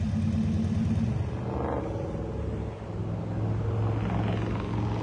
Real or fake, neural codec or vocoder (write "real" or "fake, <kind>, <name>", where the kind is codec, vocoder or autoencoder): real